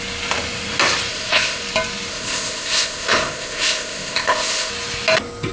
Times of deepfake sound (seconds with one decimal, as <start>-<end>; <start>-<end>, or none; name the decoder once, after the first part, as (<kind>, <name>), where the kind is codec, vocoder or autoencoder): 1.1-1.6 (codec, ZipCodec); 2.1-4.7